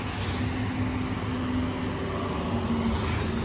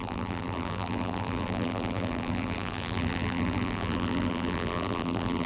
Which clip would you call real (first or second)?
first